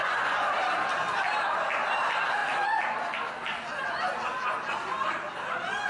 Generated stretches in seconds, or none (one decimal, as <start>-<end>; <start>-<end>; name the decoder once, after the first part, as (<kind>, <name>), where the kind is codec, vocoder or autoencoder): 0.0-0.5 (vocoder, Vocos)